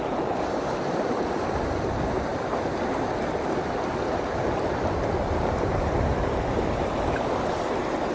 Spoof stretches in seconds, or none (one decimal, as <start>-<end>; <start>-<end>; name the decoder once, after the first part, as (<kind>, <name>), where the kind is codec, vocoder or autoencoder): 2.3-6.5 (vocoder, BigVGAN v2)